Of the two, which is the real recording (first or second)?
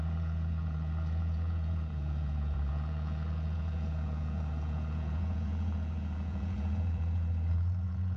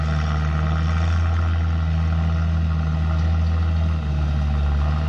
second